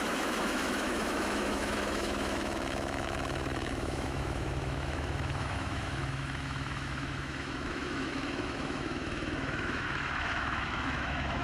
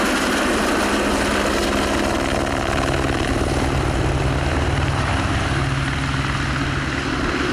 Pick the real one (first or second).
second